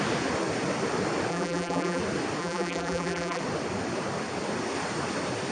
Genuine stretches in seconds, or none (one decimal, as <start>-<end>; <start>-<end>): 0.0-1.3; 2.0-2.4; 3.4-5.5